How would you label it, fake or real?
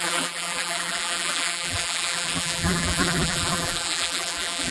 fake